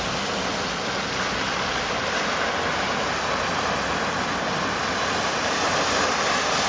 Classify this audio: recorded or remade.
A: recorded